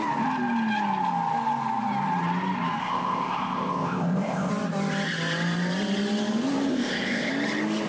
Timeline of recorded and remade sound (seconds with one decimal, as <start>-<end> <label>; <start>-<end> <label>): 0.0-2.8 recorded; 2.8-4.5 remade; 4.5-6.7 recorded; 6.7-7.3 remade; 7.3-7.9 recorded